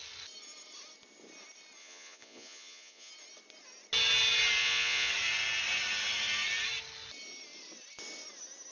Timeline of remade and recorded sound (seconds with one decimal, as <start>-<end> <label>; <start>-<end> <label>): 0.0-1.8 recorded; 1.8-3.1 remade; 3.1-4.6 recorded; 4.6-5.1 remade; 5.1-8.7 recorded